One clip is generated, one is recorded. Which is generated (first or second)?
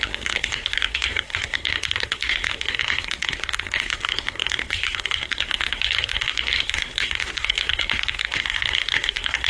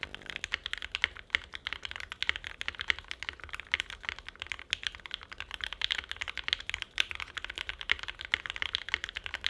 first